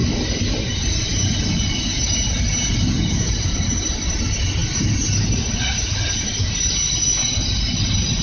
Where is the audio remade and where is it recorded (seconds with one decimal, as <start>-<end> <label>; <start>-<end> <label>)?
0.0-8.2 recorded